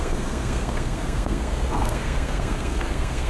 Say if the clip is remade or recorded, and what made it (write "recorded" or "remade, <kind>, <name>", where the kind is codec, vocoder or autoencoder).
remade, codec, SNAC